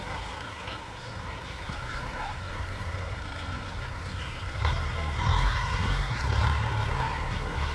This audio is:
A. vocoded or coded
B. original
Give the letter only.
A